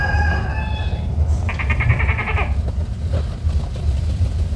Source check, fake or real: real